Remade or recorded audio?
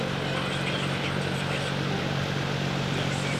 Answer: recorded